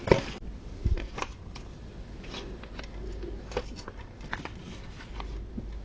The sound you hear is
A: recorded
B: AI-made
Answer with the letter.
A